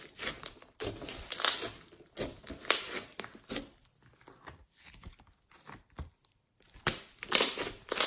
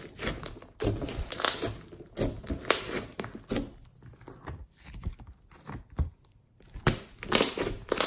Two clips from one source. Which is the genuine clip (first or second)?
second